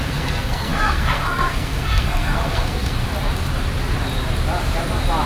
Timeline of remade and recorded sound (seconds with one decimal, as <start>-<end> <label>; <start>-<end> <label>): 0.0-3.1 remade; 3.1-5.3 recorded